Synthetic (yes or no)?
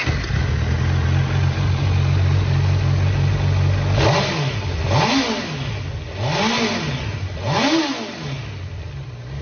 no